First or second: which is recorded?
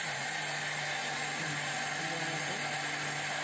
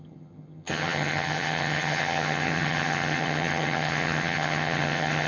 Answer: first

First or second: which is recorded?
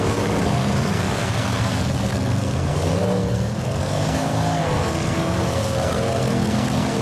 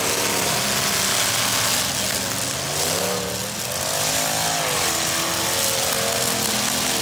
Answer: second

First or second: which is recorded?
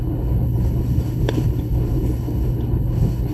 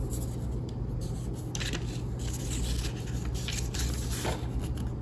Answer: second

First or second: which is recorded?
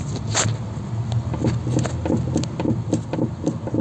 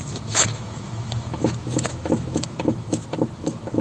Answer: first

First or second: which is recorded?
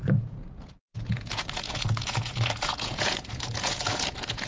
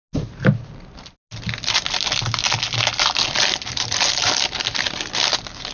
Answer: second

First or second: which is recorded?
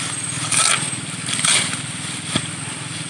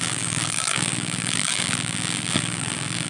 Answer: first